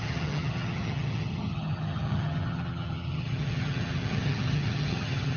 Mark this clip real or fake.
fake